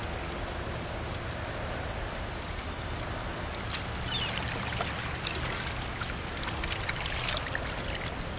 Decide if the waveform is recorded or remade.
recorded